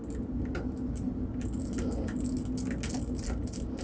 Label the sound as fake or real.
real